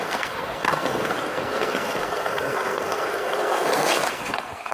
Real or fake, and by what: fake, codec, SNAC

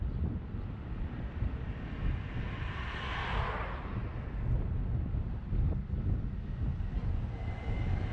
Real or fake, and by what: real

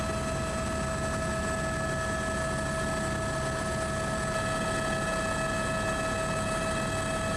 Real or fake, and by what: real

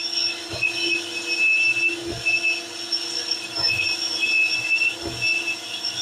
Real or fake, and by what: real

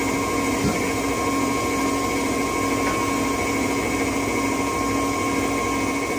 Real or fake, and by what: real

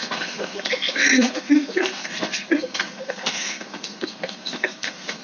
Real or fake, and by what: fake, codec, SNAC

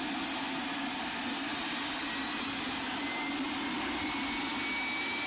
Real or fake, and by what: real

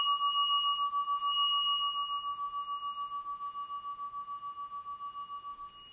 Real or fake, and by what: real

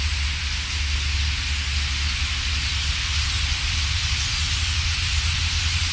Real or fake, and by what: real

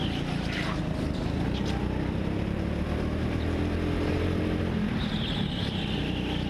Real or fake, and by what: real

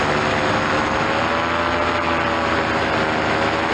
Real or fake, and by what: real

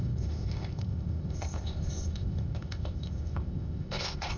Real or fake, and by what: fake, codec, ZipCodec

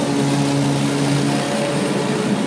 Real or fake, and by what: real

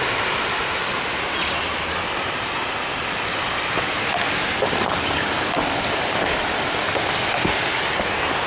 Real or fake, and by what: real